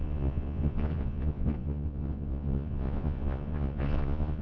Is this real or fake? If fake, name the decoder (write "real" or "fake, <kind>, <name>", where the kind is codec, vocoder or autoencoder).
fake, vocoder, Vocos